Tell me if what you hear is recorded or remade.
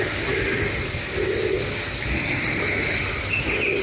recorded